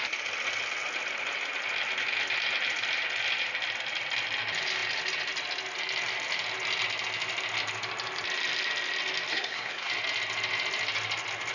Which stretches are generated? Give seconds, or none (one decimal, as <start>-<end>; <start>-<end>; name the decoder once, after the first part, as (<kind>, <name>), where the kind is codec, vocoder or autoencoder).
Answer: 9.3-9.9 (codec, SNAC)